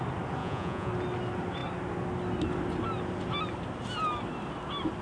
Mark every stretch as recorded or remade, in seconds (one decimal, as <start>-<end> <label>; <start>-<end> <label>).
0.0-0.4 recorded; 0.4-0.9 remade; 0.9-5.0 recorded